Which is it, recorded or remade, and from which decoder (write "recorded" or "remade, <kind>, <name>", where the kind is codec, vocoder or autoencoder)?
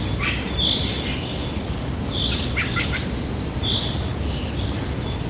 recorded